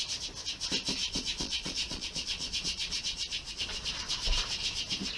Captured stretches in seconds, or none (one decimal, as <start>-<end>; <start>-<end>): 0.0-1.0; 4.0-5.2